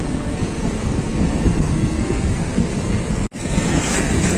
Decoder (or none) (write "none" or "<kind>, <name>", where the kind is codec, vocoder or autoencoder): codec, SNAC